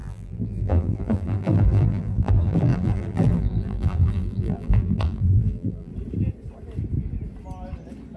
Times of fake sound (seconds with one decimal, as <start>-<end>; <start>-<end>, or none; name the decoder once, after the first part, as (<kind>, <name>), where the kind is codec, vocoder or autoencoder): 0.0-5.9 (vocoder, BigVGAN v2)